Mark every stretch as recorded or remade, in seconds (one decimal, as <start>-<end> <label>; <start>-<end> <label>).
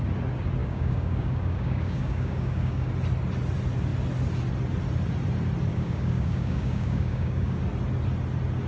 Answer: 0.0-0.6 recorded; 0.6-2.9 remade; 2.9-5.7 recorded; 5.7-7.6 remade; 7.6-8.7 recorded